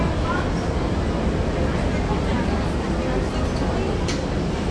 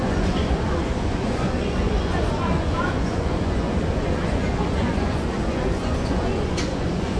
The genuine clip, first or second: first